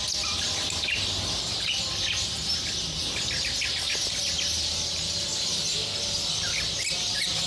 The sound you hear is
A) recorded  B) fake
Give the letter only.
A